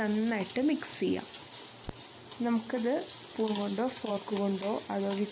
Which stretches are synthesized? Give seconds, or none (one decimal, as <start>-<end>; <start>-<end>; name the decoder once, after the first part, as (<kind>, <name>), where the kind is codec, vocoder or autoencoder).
none